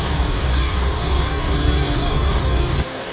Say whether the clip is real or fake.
fake